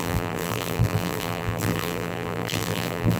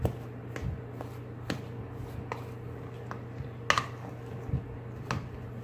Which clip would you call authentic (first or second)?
second